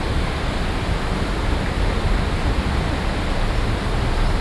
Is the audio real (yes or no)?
yes